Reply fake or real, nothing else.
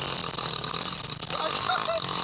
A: real